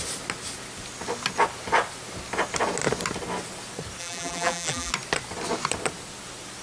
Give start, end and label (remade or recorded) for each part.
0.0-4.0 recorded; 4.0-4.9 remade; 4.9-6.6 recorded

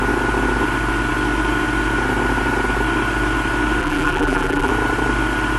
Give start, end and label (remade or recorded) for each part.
0.0-3.8 recorded; 3.8-4.7 remade; 4.7-5.6 recorded

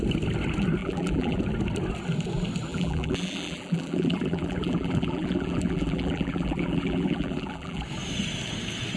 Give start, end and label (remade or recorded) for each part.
0.0-0.8 recorded; 0.8-1.4 remade; 1.4-2.7 recorded; 2.7-7.8 remade; 7.8-9.0 recorded

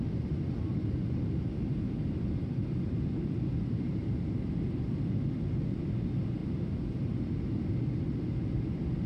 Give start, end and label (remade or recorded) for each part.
0.0-9.1 recorded

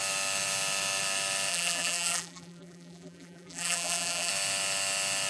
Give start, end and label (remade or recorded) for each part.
0.0-1.5 recorded; 1.5-4.3 remade; 4.3-5.3 recorded

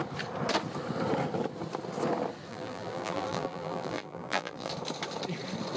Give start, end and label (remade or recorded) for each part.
0.0-2.5 recorded; 2.5-4.7 remade; 4.7-5.8 recorded